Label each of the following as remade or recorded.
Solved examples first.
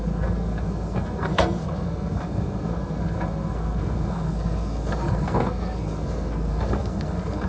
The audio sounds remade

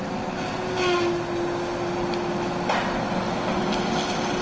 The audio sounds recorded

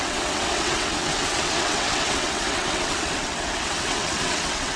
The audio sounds remade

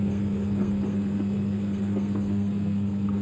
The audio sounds remade